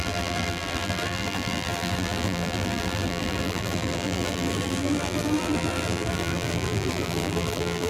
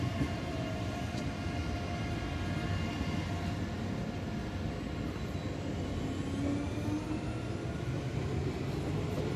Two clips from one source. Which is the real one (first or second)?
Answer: second